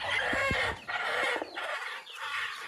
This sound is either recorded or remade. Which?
recorded